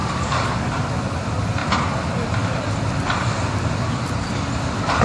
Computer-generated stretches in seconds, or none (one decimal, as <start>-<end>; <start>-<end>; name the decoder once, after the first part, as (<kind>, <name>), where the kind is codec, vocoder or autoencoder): 0.0-0.7 (codec, DAC)